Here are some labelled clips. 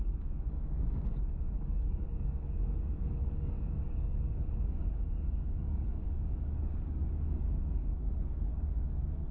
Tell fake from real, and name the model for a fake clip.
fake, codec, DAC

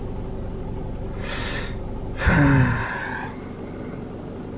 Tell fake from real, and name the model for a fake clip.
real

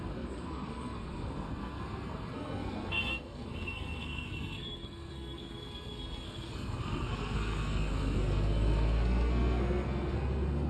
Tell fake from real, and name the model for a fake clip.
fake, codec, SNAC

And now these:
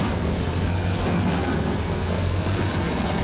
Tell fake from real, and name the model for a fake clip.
fake, codec, SNAC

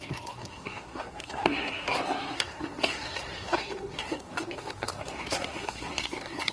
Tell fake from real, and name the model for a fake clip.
fake, codec, SNAC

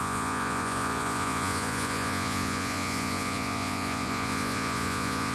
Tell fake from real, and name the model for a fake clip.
fake, vocoder, Vocos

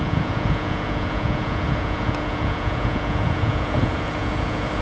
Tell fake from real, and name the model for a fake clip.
fake, vocoder, Vocos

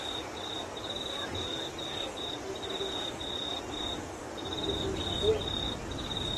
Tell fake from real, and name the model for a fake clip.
real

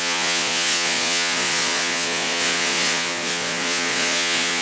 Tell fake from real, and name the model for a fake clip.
fake, vocoder, Vocos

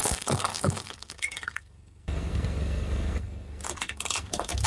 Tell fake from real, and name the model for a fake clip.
fake, codec, SNAC